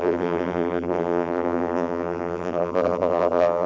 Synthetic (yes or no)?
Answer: yes